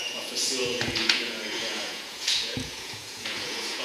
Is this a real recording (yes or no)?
no